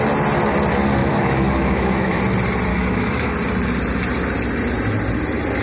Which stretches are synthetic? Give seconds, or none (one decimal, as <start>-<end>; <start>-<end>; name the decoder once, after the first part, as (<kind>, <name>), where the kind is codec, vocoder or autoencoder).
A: 1.0-2.2 (autoencoder, DAC-VAE); 2.7-3.3

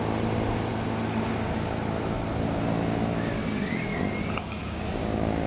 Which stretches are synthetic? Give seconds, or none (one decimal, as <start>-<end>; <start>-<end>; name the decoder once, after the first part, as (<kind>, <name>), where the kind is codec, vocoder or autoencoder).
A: 4.6-5.5 (codec, DAC)

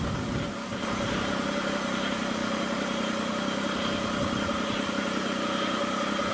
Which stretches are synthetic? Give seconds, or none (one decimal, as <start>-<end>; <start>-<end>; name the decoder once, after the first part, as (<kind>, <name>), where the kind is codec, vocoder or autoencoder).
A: none

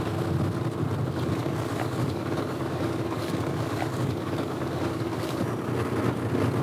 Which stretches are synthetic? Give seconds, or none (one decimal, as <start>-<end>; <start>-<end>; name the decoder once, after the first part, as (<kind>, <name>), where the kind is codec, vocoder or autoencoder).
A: 1.4-5.4 (codec, DAC)